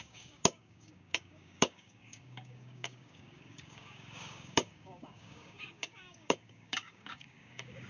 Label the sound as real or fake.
fake